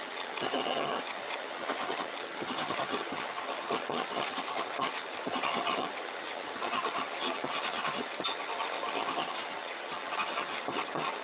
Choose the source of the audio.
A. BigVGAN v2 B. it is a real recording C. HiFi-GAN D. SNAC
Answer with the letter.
C